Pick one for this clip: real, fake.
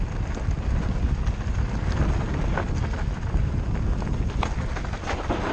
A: real